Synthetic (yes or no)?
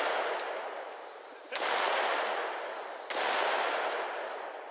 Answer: no